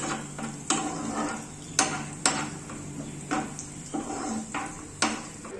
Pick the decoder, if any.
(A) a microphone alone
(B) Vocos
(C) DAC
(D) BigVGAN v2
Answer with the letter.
A